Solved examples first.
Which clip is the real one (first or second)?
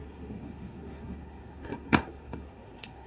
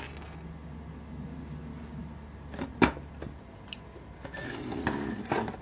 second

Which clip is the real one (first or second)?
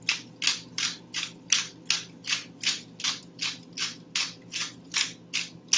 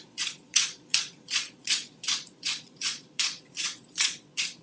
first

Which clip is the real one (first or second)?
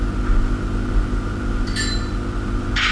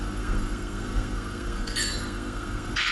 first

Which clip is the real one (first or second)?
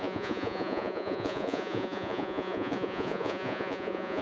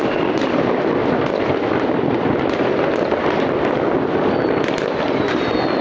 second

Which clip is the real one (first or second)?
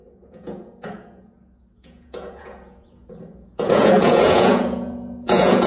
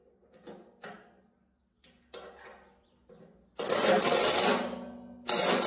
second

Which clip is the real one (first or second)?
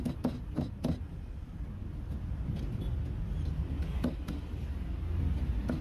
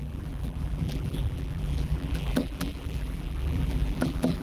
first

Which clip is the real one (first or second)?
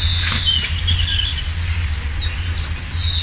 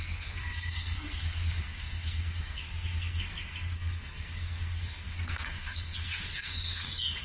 first